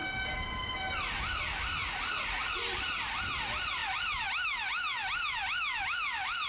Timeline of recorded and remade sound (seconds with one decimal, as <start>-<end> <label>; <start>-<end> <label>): 0.0-1.8 recorded; 1.8-2.5 remade; 2.5-6.5 recorded